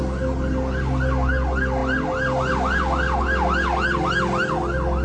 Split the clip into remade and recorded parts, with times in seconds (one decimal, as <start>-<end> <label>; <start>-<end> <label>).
0.0-5.0 recorded